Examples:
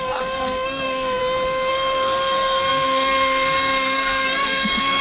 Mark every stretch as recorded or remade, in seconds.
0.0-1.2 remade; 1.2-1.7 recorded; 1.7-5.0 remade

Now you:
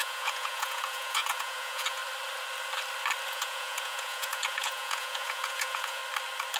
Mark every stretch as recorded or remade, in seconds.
0.0-2.0 remade; 2.0-3.3 recorded; 3.3-6.0 remade; 6.0-6.6 recorded

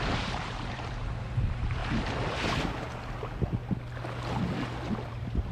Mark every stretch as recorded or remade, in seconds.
0.0-1.8 remade; 1.8-5.1 recorded; 5.1-5.5 remade

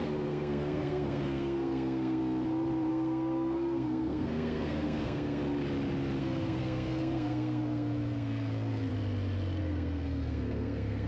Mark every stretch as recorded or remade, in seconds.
0.0-2.2 remade; 2.2-2.9 recorded; 2.9-5.4 remade; 5.4-6.2 recorded; 6.2-8.9 remade; 8.9-9.6 recorded; 9.6-11.1 remade

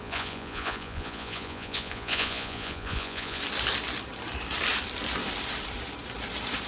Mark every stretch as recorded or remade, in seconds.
0.0-3.4 remade; 3.4-6.7 recorded

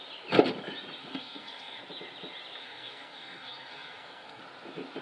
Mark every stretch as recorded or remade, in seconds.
0.0-1.0 recorded; 1.0-1.8 remade; 1.8-2.6 recorded; 2.6-4.4 remade; 4.4-5.0 recorded

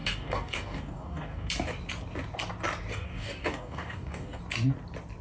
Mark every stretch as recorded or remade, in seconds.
0.0-1.5 remade; 1.5-2.9 recorded; 2.9-4.4 remade; 4.4-5.2 recorded

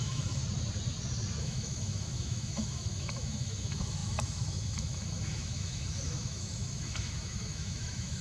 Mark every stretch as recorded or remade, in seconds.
0.0-0.4 remade; 0.4-1.4 recorded; 1.4-8.2 remade